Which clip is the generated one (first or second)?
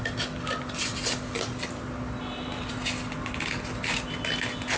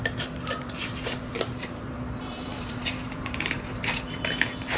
second